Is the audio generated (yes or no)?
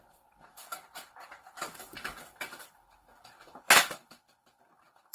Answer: yes